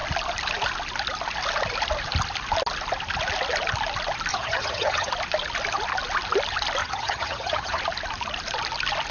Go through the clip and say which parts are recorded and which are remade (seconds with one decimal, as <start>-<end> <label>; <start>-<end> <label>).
0.0-4.3 recorded; 4.3-5.1 remade; 5.1-6.8 recorded; 6.8-7.8 remade; 7.8-9.1 recorded